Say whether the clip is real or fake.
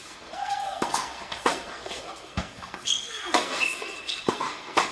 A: fake